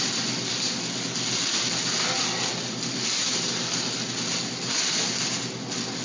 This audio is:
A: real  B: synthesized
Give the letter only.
A